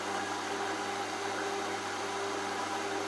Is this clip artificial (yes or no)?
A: no